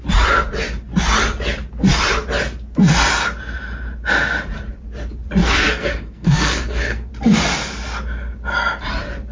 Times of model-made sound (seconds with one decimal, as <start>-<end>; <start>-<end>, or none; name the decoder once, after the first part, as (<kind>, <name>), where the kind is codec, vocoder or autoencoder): 5.4-7.1 (codec, SNAC)